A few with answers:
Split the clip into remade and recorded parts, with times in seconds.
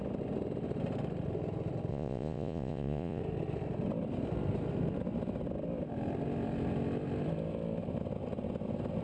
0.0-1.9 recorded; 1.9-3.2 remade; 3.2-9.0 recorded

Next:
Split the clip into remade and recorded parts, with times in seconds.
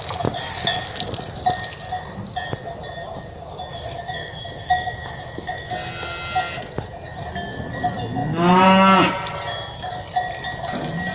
0.0-3.7 recorded; 3.7-5.7 remade; 5.7-11.1 recorded